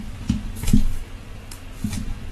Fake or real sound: fake